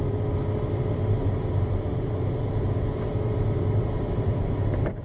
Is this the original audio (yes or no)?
yes